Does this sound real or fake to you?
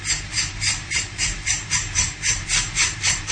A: fake